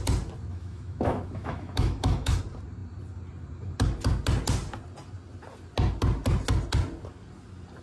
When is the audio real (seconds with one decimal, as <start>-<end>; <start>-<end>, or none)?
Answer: 0.0-0.5; 2.4-7.8